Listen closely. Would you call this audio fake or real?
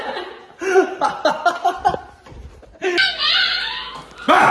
real